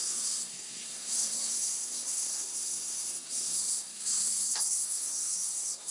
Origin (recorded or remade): remade